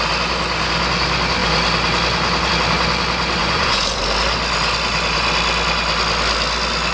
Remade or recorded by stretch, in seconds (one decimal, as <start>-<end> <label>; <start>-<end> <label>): 0.0-3.4 recorded; 3.4-4.0 remade; 4.0-6.9 recorded